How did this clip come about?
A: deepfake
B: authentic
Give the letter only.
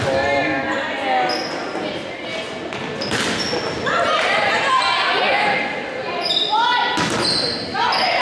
B